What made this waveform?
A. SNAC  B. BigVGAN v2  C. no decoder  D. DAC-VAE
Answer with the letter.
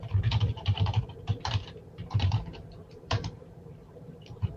B